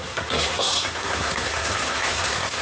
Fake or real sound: fake